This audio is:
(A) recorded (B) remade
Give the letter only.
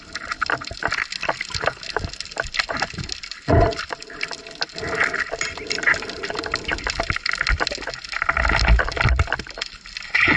A